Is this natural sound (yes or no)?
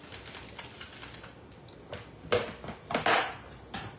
yes